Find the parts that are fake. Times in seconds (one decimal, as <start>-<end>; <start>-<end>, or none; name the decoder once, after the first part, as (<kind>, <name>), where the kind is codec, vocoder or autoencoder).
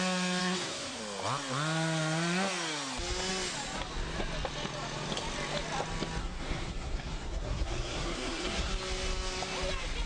0.4-1.0 (codec, SNAC); 6.2-8.7